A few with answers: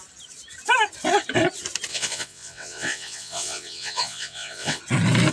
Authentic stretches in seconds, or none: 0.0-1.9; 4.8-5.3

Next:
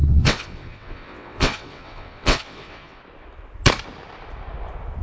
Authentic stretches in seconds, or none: 3.0-5.0

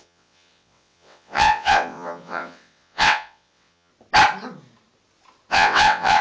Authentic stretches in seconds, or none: 3.9-5.5

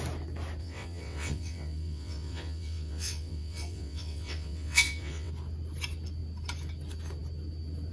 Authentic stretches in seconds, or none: 0.0-0.6; 5.3-7.9

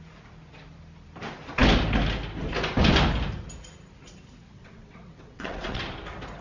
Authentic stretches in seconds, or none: 0.0-4.4; 5.8-6.4

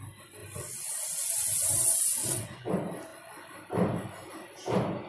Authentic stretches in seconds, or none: 0.0-2.2; 2.7-5.1

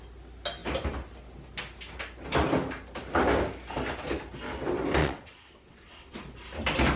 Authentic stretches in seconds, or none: 0.0-5.0; 6.2-7.0

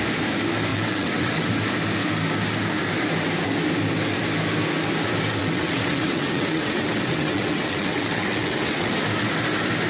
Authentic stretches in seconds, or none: 0.0-0.7; 1.5-5.4; 8.9-9.9